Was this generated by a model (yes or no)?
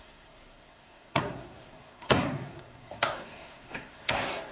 yes